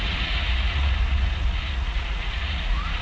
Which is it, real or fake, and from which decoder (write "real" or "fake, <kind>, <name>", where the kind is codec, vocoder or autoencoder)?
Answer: fake, vocoder, Vocos